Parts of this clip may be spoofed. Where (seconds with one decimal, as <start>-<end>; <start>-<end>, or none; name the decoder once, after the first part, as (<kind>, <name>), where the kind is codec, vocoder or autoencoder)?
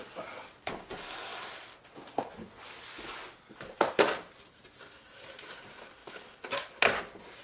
none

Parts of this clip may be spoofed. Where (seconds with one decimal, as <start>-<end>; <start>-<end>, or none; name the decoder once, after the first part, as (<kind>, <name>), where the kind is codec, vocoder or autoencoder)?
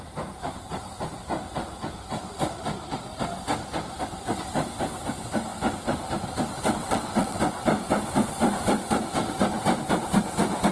6.8-7.4 (vocoder, WaveNeXt)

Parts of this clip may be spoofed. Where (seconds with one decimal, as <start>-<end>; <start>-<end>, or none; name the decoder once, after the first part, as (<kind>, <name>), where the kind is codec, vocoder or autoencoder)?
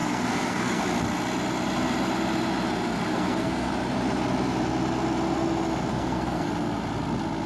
0.0-0.8 (codec, SNAC); 3.1-3.7; 5.9-6.5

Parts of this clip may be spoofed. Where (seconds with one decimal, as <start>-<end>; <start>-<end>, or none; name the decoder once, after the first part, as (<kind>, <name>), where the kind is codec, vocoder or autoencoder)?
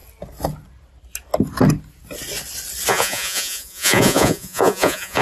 2.9-5.2 (vocoder, Vocos)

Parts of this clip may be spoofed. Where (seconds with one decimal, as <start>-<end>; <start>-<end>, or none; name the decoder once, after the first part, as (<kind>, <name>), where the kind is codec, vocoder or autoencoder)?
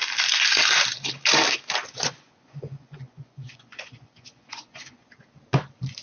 1.8-5.1 (vocoder, Vocos)